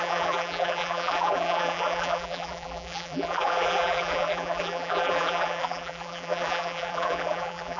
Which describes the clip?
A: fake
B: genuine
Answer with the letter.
A